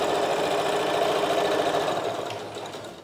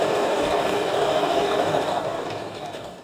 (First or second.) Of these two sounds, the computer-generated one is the second